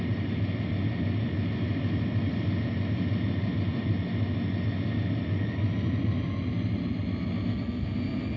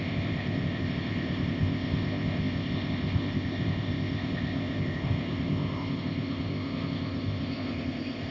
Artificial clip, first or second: second